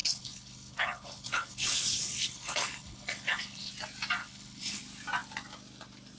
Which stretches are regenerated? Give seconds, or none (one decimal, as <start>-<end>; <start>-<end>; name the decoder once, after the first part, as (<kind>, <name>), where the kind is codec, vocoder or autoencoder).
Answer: 0.0-3.7 (codec, HILCodec); 4.2-4.8